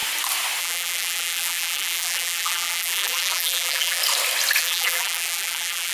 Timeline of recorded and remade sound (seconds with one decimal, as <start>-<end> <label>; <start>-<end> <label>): 0.0-0.6 recorded; 0.6-4.0 remade; 4.0-4.6 recorded; 4.6-5.9 remade